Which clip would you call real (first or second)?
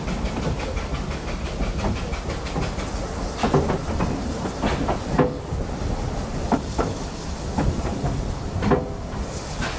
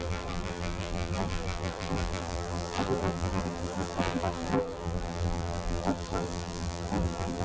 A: first